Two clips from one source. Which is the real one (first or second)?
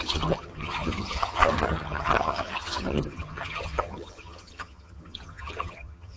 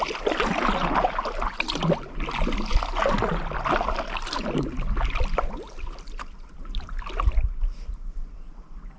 second